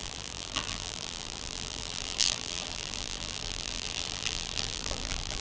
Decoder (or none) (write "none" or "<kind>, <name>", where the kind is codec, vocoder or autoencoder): vocoder, BigVGAN v2